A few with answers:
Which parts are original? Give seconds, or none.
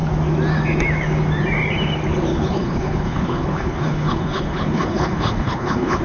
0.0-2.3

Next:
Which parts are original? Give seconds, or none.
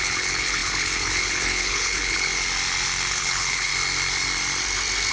2.3-3.1; 3.7-5.1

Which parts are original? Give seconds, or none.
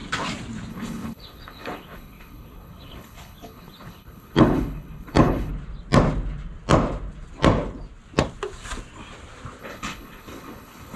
0.0-0.7; 5.5-9.6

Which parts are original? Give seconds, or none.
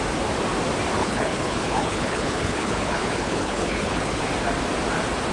0.0-1.0; 4.2-5.3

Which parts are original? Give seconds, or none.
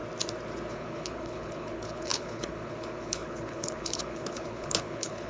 0.0-0.7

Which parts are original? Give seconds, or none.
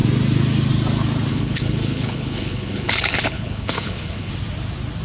0.0-1.3; 4.3-5.0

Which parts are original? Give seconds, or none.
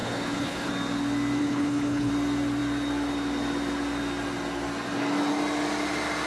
0.7-1.4; 2.1-6.3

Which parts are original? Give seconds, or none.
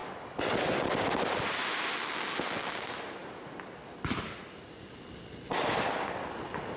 0.0-6.8